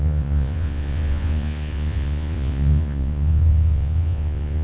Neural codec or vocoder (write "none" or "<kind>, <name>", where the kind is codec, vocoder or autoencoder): vocoder, Vocos